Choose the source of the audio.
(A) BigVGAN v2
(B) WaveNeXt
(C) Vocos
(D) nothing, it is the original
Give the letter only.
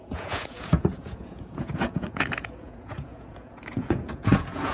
C